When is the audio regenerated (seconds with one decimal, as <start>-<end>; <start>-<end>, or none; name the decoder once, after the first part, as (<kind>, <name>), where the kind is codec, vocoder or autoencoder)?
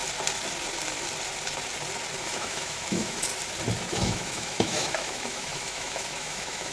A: 2.2-3.3 (autoencoder, DAC-VAE); 3.9-6.7